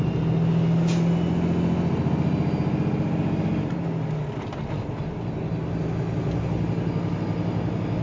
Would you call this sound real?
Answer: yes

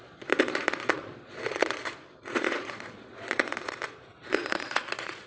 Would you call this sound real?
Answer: no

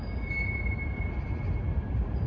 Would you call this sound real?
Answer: yes